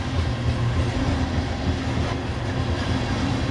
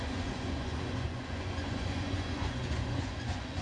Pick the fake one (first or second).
second